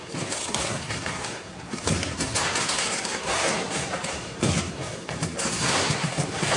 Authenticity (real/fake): fake